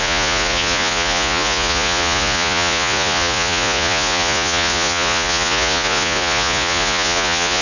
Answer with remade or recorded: remade